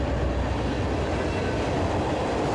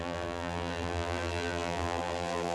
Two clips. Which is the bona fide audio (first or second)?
first